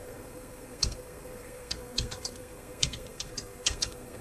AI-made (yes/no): yes